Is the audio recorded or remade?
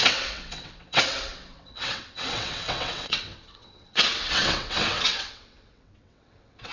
remade